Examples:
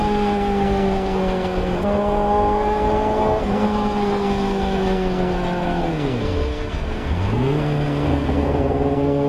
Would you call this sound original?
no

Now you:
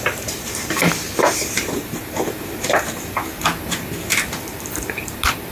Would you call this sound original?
no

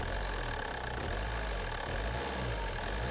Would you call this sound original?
yes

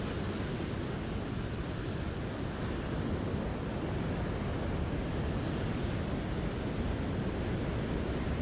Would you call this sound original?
yes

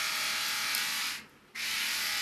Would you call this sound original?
yes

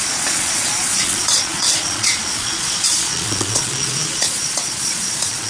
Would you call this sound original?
no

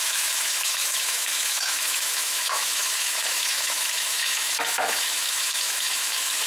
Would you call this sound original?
no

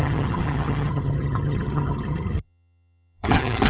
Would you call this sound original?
no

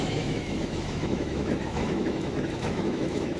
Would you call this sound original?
no